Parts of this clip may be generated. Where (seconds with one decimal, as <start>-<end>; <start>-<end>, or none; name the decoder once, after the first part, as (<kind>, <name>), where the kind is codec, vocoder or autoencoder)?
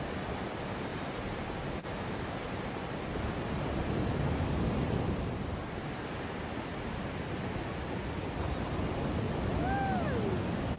0.9-5.9 (vocoder, BigVGAN v2)